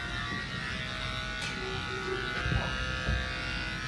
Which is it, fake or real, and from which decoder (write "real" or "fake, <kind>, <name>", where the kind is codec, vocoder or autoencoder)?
real